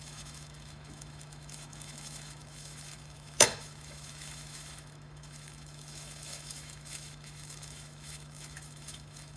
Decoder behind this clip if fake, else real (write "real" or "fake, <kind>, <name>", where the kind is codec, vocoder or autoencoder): fake, autoencoder, DAC-VAE